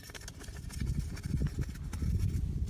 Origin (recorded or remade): recorded